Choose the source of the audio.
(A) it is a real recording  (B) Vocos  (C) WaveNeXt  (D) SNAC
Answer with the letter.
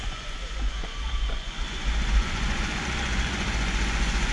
B